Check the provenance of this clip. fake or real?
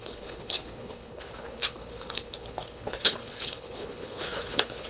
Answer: fake